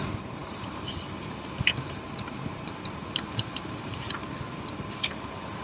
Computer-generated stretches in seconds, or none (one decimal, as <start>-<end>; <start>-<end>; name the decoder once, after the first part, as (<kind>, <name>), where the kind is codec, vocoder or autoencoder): 0.0-5.6 (vocoder, BigVGAN v2)